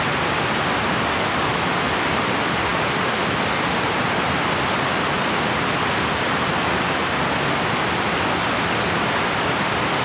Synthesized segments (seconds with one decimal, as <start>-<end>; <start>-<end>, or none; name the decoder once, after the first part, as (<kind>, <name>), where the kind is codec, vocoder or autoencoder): none